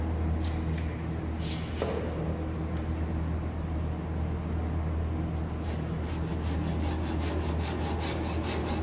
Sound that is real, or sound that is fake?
real